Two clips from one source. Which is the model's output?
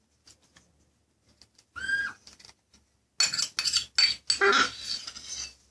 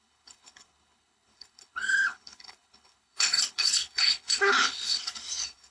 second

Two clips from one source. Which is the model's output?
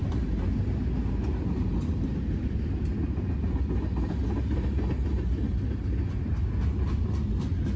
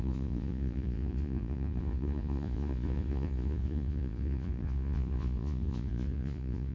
second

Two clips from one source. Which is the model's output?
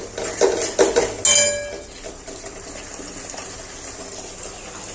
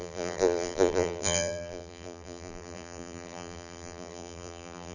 second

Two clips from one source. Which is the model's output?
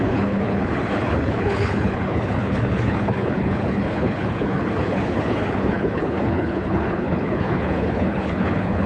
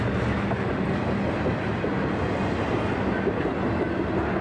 first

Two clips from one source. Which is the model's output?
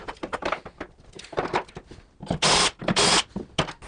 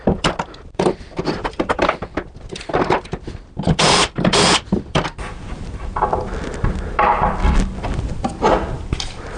second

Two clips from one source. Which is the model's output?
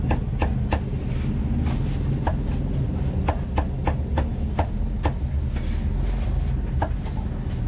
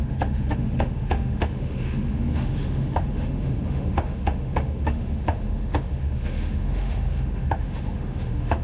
second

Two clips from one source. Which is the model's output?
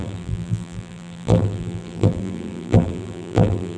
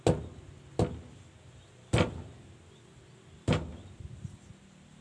first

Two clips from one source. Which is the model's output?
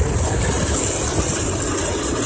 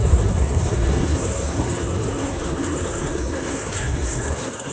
second